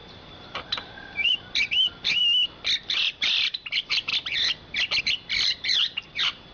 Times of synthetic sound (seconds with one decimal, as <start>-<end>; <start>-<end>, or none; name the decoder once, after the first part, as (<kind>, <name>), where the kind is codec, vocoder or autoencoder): 0.0-2.2 (vocoder, BigVGAN v2); 2.8-4.1; 5.0-6.5